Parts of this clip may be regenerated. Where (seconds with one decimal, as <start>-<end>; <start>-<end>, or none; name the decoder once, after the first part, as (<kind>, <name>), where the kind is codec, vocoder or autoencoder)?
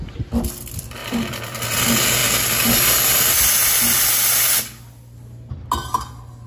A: 1.0-1.8 (vocoder, BigVGAN v2)